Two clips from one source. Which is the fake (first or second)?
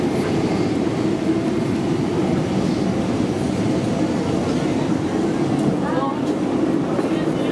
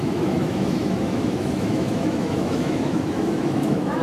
second